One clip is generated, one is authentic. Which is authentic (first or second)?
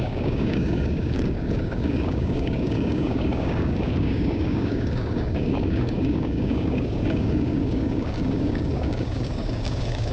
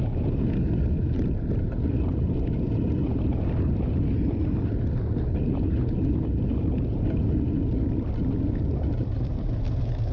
second